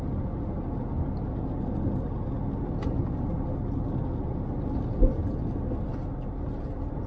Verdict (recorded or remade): recorded